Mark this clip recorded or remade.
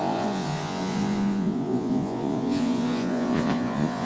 remade